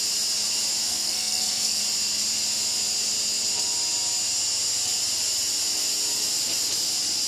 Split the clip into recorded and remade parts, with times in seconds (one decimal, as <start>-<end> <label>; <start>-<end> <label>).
0.0-0.9 recorded; 0.9-1.8 remade; 1.8-7.3 recorded